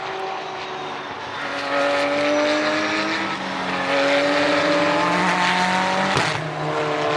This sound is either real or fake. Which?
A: real